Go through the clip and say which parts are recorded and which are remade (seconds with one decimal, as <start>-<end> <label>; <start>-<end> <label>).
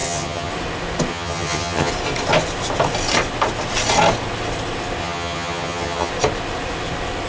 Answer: 0.0-0.5 remade; 0.5-1.1 recorded; 1.1-1.9 remade; 1.9-5.0 recorded; 5.0-6.1 remade; 6.1-7.3 recorded